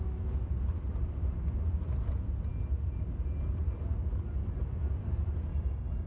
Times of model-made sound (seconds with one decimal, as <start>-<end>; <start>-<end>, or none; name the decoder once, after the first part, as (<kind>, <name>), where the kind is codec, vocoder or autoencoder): 5.5-6.1 (codec, DAC)